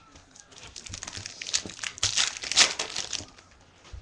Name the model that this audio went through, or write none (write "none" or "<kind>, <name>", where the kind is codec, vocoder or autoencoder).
none